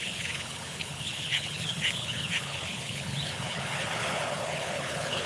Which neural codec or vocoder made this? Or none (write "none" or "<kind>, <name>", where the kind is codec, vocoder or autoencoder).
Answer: codec, HILCodec